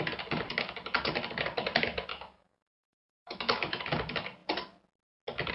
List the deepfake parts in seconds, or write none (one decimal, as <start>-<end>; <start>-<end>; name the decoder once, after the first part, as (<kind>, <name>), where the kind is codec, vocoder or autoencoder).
2.1-3.8 (autoencoder, DAC-VAE)